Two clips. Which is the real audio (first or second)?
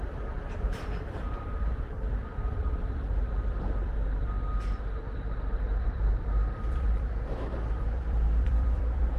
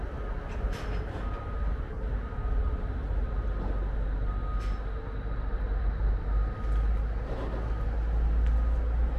second